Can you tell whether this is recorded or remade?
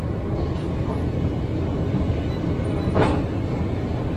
recorded